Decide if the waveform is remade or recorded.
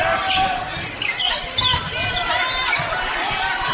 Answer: remade